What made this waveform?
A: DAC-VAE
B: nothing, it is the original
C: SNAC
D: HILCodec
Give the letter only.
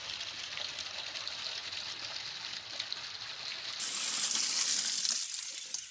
B